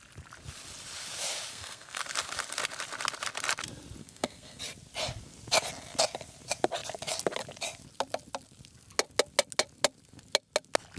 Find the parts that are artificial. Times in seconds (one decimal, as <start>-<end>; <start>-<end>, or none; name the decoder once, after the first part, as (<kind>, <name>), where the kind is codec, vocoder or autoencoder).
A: 1.5-2.0 (codec, SNAC); 4.0-4.6